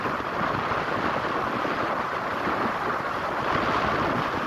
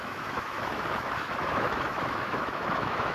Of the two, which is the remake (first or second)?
second